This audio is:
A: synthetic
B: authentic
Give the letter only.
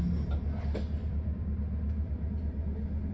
B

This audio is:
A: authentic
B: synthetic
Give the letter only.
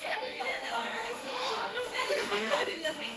B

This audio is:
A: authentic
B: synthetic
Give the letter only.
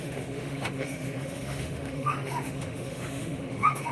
B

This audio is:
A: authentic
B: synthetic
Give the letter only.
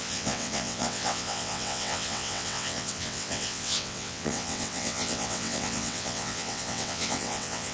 B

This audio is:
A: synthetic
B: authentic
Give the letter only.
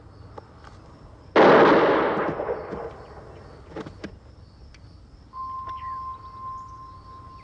B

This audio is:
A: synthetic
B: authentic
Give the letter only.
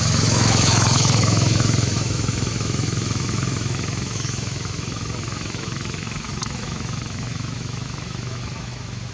A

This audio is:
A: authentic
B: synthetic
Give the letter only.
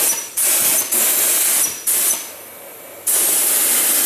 A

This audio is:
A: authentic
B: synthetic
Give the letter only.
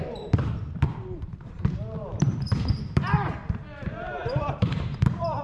B